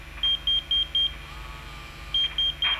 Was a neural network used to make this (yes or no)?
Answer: no